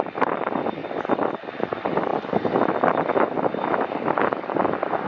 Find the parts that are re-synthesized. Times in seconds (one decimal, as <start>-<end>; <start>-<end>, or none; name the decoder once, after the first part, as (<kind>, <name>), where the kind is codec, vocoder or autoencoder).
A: none